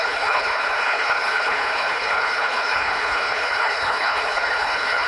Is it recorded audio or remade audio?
remade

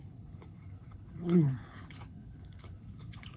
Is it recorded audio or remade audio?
remade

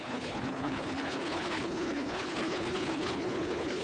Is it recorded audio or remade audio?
remade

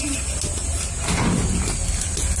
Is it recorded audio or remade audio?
recorded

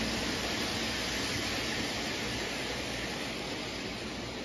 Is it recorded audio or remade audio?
recorded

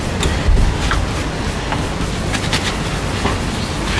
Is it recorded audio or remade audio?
recorded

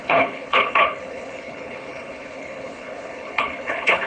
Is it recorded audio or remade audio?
remade